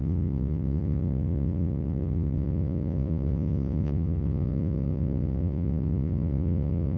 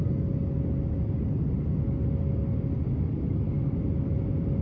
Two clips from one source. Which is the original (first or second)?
second